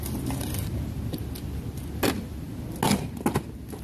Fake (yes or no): no